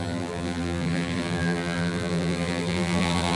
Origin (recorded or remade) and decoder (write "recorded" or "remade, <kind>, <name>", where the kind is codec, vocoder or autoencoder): remade, vocoder, BigVGAN v2